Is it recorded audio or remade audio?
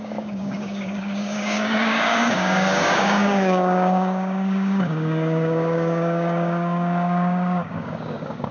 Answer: remade